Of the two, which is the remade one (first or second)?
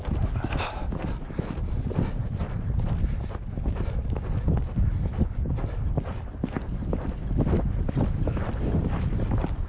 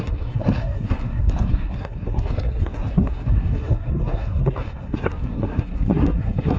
second